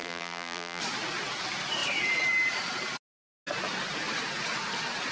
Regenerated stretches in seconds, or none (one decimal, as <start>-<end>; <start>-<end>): 0.0-0.8